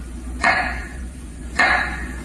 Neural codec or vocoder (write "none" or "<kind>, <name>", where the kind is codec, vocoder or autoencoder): vocoder, Vocos